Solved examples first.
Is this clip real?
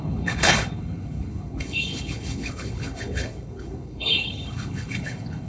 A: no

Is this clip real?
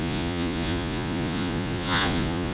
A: no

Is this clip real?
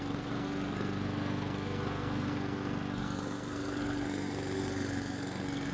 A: no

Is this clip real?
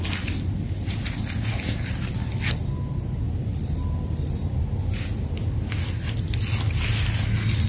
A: yes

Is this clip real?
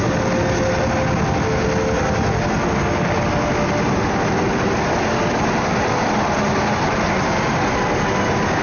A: yes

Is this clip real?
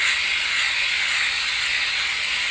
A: yes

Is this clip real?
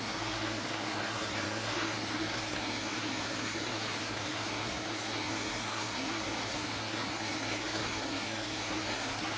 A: no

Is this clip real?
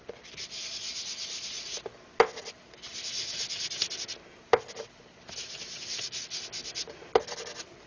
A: yes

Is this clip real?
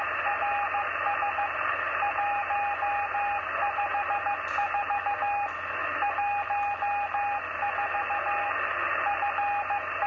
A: yes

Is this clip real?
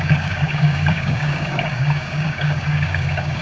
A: no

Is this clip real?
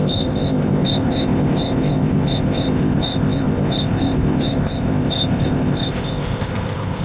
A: no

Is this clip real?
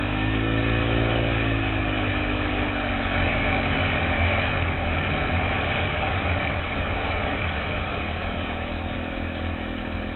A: no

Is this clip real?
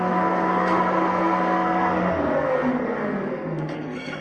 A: no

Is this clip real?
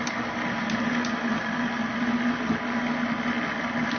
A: yes